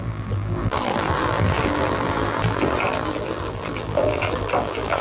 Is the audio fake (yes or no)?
yes